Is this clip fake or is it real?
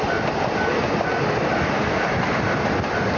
real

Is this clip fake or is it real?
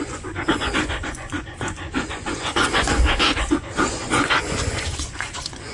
fake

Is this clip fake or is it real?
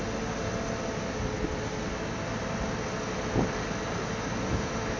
real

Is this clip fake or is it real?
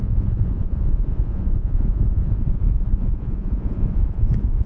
fake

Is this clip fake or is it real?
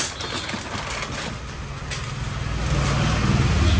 real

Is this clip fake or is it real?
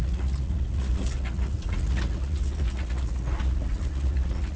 fake